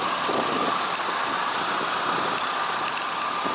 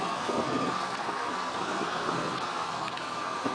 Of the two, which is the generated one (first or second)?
second